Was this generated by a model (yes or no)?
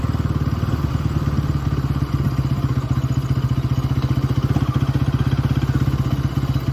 no